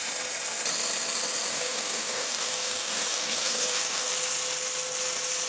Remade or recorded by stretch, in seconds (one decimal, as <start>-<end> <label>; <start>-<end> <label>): 0.0-1.5 recorded; 1.5-4.1 remade; 4.1-5.5 recorded